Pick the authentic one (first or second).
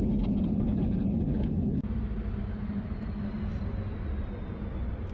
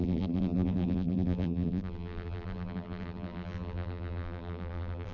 first